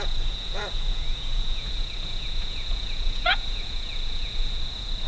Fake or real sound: fake